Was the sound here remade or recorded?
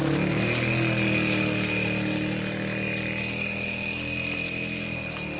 recorded